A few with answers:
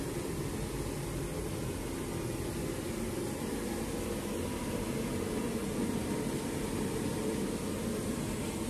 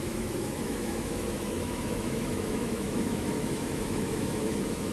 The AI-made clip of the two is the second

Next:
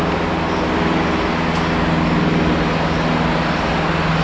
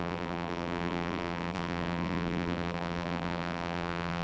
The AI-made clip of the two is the second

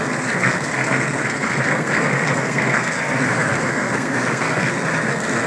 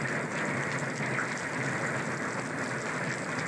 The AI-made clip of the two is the first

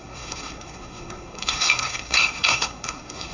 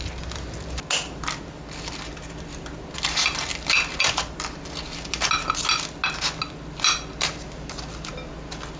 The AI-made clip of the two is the first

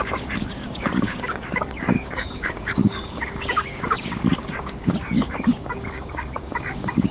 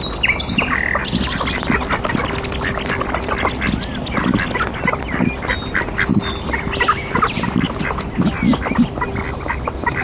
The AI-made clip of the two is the first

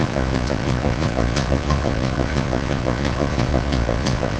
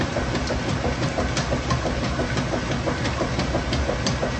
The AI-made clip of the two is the first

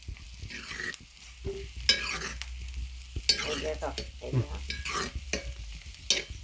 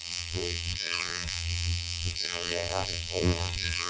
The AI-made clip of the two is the second